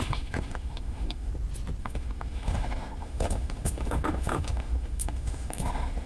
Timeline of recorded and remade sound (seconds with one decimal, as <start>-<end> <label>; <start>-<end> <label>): 0.0-1.3 remade; 1.3-1.8 recorded; 1.8-6.1 remade